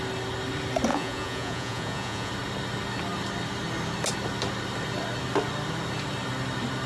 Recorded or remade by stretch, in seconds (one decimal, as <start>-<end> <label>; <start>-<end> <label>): 0.0-0.9 recorded; 0.9-2.3 remade; 2.3-6.9 recorded